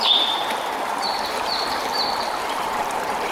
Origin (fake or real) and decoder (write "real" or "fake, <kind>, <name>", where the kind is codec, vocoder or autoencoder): fake, vocoder, BigVGAN v2